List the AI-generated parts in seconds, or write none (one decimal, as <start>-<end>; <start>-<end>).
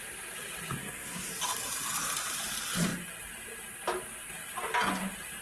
0.8-1.3